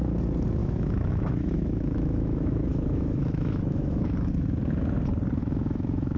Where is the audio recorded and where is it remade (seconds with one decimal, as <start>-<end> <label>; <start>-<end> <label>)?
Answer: 0.0-0.6 recorded; 0.6-4.3 remade; 4.3-5.4 recorded; 5.4-6.2 remade